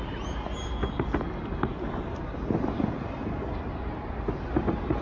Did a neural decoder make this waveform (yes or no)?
no